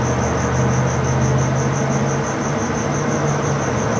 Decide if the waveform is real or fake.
real